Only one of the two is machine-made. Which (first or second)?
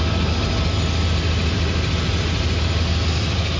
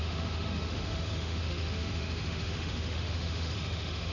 second